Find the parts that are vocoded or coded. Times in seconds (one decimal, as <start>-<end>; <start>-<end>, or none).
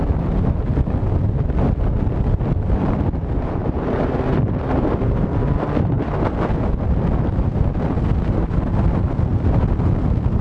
none